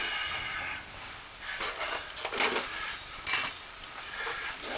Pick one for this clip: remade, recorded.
recorded